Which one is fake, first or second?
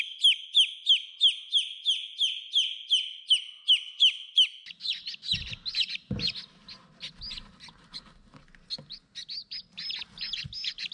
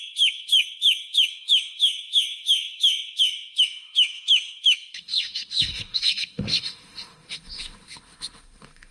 second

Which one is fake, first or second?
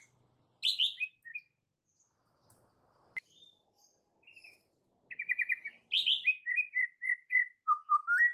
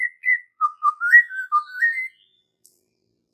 second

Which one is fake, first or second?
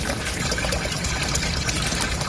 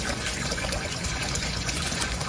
second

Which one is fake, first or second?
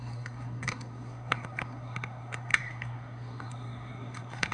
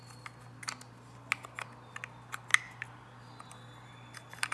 first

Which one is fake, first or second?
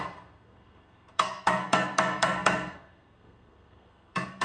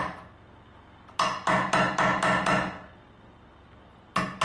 first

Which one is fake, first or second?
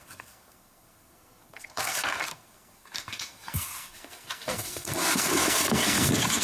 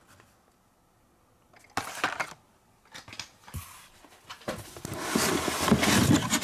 first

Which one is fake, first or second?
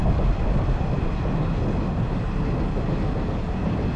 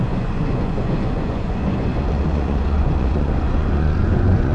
second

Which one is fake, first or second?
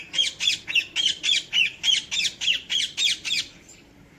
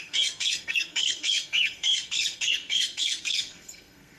second